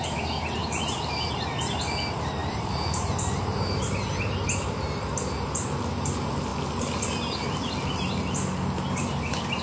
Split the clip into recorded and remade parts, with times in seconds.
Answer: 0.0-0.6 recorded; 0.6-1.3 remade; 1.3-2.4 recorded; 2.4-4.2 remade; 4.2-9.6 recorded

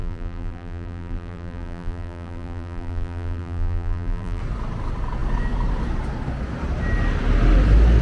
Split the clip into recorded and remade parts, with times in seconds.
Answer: 0.0-4.4 remade; 4.4-8.0 recorded

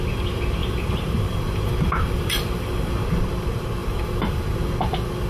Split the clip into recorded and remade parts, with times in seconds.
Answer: 0.0-0.6 recorded; 0.6-3.2 remade; 3.2-3.8 recorded; 3.8-4.7 remade; 4.7-5.3 recorded

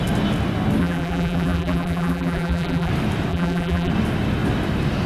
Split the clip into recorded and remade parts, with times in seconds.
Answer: 0.0-0.8 recorded; 0.8-2.9 remade; 2.9-3.3 recorded; 3.3-3.9 remade; 3.9-5.1 recorded

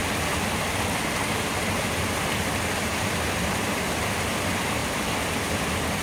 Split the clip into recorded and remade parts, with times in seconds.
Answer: 0.0-6.0 recorded

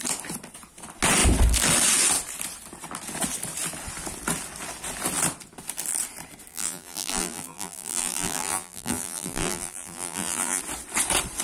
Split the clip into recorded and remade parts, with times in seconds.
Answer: 0.0-6.5 recorded; 6.5-10.6 remade; 10.6-11.4 recorded